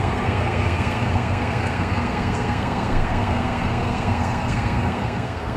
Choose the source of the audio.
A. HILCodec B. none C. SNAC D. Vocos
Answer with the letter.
C